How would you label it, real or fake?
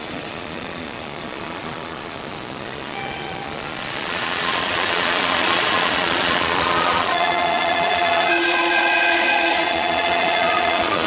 fake